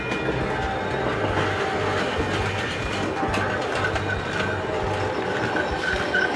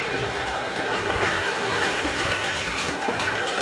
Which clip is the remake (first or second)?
second